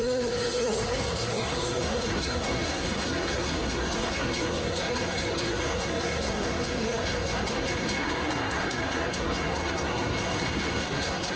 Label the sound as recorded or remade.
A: remade